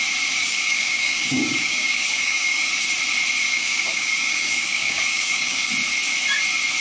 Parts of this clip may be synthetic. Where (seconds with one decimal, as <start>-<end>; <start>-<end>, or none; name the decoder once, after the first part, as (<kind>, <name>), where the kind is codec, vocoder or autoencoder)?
0.4-2.7 (codec, DAC); 3.5-5.7